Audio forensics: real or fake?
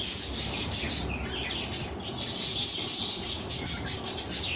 real